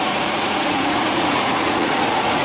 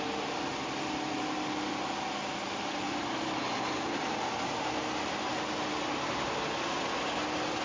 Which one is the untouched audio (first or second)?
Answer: second